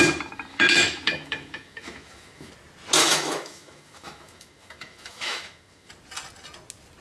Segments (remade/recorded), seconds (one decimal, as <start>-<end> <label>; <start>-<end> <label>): 0.0-0.5 recorded; 0.5-2.5 remade; 2.5-3.0 recorded; 3.0-5.9 remade; 5.9-7.0 recorded

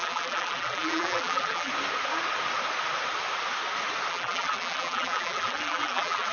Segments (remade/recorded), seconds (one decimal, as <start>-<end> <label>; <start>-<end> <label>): 0.0-1.7 remade; 1.7-4.1 recorded; 4.1-6.3 remade

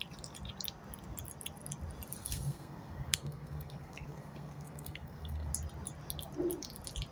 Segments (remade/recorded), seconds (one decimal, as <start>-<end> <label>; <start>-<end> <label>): 0.0-2.2 recorded; 2.2-5.5 remade; 5.5-7.1 recorded

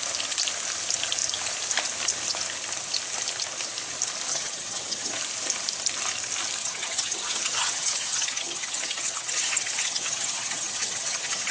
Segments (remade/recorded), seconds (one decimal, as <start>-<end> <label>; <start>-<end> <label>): 0.0-4.3 recorded; 4.3-5.2 remade; 5.2-6.6 recorded; 6.6-11.5 remade

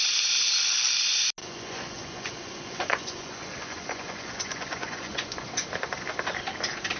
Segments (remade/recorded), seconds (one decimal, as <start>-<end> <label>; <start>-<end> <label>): 0.0-1.4 recorded; 1.4-5.5 remade; 5.5-7.0 recorded